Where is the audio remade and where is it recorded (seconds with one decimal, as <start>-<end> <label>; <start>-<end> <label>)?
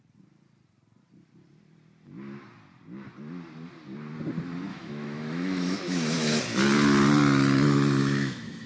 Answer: 0.0-4.7 recorded; 4.7-6.4 remade; 6.4-8.0 recorded; 8.0-8.7 remade